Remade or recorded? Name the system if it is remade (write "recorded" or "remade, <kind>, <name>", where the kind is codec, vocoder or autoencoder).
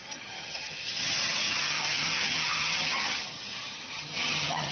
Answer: remade, vocoder, HiFi-GAN